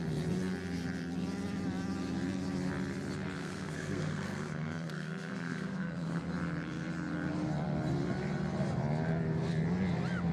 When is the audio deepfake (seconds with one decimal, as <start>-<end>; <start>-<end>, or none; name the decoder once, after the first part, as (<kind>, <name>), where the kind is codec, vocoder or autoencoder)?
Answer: 3.4-6.2 (codec, SNAC)